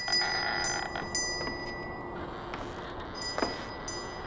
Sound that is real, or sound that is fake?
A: real